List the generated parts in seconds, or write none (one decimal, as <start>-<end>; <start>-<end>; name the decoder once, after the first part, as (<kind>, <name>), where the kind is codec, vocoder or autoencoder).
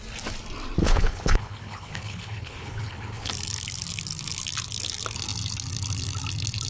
0.8-3.3 (codec, HILCodec)